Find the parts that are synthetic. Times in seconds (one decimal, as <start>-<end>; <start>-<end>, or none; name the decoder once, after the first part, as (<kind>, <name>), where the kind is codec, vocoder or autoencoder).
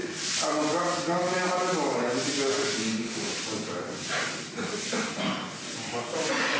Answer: 2.5-3.3 (autoencoder, DAC-VAE)